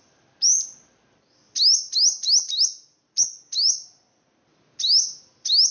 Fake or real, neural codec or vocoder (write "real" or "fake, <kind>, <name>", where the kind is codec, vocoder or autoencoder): real